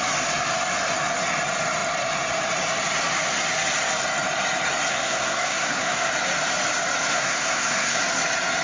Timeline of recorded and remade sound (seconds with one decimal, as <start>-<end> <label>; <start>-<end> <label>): 0.0-4.9 recorded; 4.9-6.1 remade; 6.1-7.1 recorded; 7.1-8.0 remade; 8.0-8.6 recorded